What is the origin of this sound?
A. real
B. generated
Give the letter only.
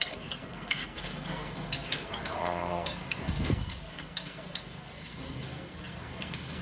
B